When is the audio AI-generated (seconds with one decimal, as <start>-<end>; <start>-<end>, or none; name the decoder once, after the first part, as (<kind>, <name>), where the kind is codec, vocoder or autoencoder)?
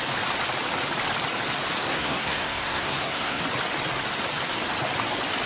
1.8-3.4 (codec, SNAC)